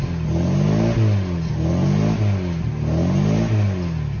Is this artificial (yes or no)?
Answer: no